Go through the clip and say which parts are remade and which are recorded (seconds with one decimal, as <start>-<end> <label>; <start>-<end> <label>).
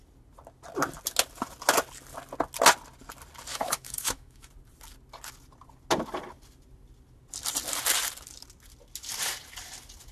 0.0-3.5 recorded; 3.5-4.5 remade; 4.5-10.1 recorded